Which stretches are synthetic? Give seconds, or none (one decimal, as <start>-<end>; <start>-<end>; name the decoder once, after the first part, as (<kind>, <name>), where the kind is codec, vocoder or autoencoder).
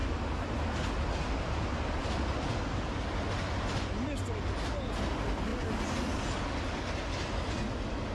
none